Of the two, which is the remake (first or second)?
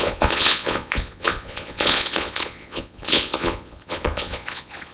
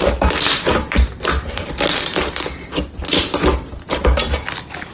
first